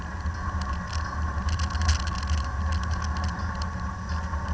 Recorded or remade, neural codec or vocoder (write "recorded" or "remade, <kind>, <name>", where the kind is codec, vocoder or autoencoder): recorded